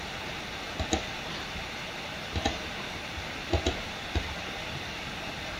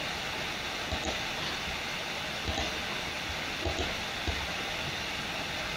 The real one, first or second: second